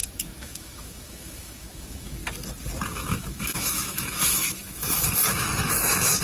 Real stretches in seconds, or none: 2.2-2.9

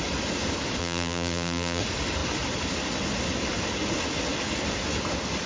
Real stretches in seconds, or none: 0.0-0.8; 1.8-5.5

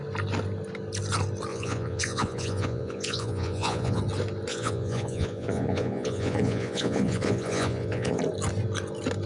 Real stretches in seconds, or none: 0.0-1.5; 4.0-4.5; 8.2-9.3